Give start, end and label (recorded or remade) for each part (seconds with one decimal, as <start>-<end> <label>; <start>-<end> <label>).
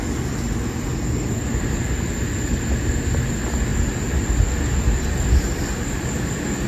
0.0-6.7 recorded